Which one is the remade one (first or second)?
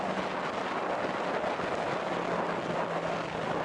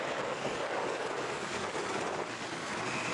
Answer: second